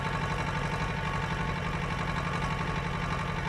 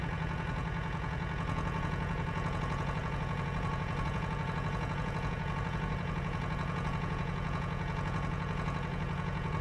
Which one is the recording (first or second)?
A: first